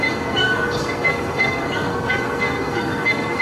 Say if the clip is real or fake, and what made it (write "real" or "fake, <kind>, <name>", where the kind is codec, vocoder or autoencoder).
fake, codec, SNAC